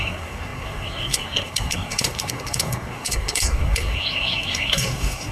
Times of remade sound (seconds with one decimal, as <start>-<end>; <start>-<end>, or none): 0.0-5.3